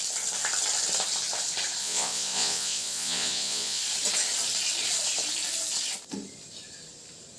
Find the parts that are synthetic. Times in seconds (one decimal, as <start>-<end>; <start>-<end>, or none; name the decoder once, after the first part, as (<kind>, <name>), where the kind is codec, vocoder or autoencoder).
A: 1.8-3.8 (vocoder, Vocos)